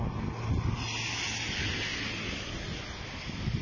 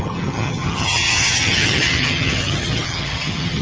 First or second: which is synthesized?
second